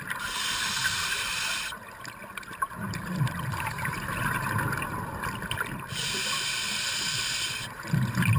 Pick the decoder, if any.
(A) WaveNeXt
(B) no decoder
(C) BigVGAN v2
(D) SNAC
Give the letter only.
C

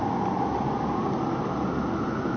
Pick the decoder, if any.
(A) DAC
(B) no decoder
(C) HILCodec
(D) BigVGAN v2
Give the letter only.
B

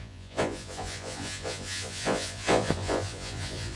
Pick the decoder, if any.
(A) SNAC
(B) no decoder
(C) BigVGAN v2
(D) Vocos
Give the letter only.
D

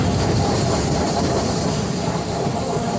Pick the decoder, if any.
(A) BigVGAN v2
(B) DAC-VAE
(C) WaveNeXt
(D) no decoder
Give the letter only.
A